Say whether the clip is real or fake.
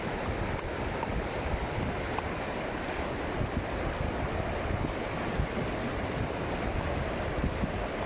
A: real